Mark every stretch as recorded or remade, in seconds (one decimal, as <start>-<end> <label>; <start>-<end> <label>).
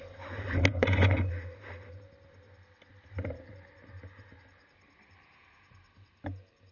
0.0-0.7 recorded; 0.7-1.3 remade; 1.3-6.7 recorded